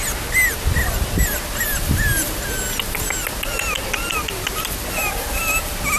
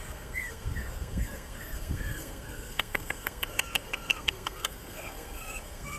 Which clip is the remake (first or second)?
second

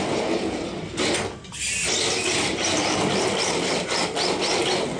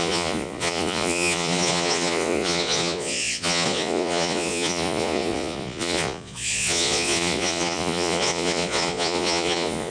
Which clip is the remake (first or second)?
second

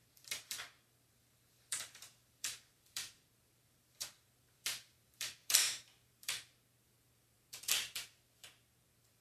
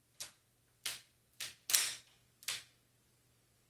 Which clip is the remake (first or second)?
first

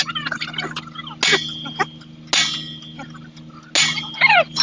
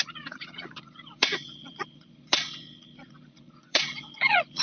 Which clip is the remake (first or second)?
second